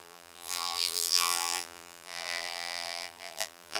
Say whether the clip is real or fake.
fake